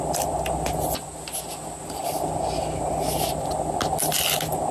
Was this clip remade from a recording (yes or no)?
no